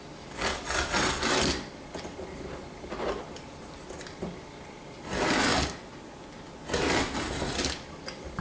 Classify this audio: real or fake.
real